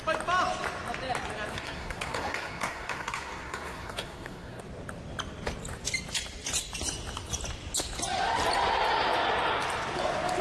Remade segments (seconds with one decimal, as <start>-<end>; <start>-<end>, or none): 1.5-4.6

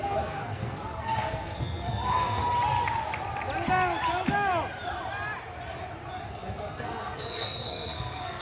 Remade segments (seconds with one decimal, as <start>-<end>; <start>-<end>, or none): 0.0-2.4; 6.3-8.4